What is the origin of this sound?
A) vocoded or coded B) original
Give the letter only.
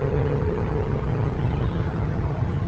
A